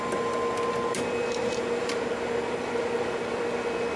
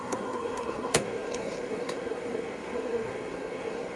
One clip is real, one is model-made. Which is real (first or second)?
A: first